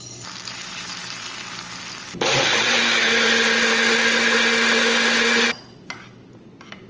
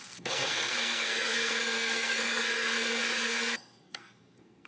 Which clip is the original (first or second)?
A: first